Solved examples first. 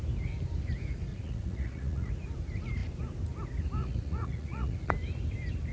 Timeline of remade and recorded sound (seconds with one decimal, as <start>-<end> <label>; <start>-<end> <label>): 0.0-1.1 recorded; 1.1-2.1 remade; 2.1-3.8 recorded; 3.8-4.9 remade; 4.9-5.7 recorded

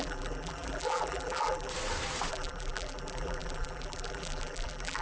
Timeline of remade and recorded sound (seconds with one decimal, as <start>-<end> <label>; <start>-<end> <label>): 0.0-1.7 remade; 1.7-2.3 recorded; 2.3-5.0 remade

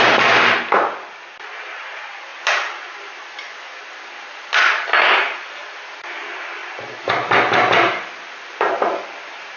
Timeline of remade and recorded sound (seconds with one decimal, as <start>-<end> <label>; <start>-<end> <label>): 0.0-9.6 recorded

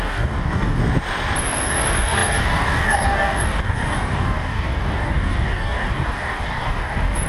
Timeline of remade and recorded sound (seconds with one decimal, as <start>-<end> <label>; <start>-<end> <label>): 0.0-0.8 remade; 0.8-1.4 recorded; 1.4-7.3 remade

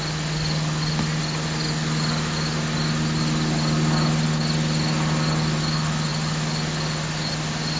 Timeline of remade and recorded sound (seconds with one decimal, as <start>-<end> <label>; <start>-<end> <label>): 0.0-7.8 recorded

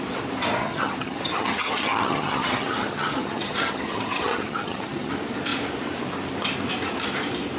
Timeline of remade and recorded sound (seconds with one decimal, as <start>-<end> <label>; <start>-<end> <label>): 0.0-0.6 recorded; 0.6-5.1 remade; 5.1-7.6 recorded

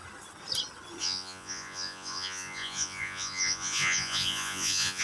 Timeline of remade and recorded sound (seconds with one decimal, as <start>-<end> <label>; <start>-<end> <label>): 0.0-1.0 recorded; 1.0-5.0 remade